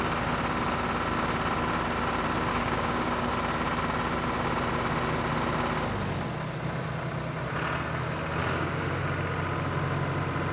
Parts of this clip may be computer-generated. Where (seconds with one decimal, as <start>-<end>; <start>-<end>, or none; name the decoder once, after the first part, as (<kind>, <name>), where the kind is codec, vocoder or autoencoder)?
2.5-3.3 (codec, DAC); 8.4-9.0